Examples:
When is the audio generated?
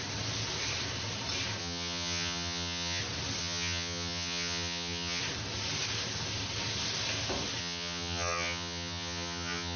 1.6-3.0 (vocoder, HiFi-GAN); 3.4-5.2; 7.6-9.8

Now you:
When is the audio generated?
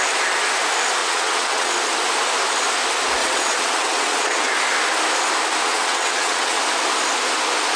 1.0-1.7 (vocoder, WaveNeXt); 3.2-4.5; 5.6-6.6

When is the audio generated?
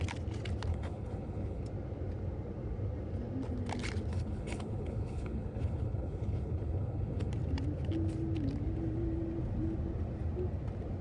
0.7-1.6 (codec, HILCodec); 4.1-7.3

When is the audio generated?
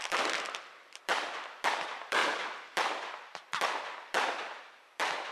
0.0-5.3 (vocoder, BigVGAN v2)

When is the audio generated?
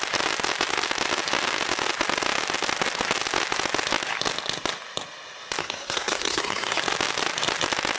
5.6-6.8 (codec, SNAC)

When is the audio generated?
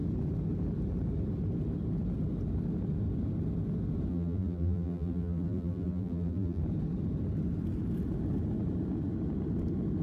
4.1-6.6 (vocoder, BigVGAN v2)